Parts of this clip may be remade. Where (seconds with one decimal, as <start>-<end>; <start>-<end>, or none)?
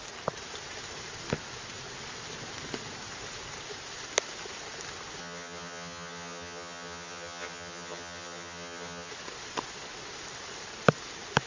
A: 5.2-9.1